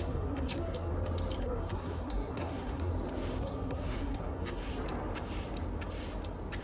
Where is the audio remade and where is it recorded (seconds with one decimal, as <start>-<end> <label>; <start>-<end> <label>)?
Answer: 0.0-0.9 remade; 0.9-1.4 recorded; 1.4-2.9 remade; 2.9-3.4 recorded; 3.4-4.7 remade; 4.7-6.6 recorded